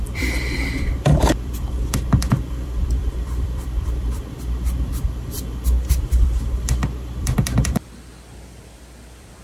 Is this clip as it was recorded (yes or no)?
no